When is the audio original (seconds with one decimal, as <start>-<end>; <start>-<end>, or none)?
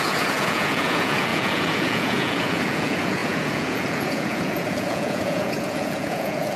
none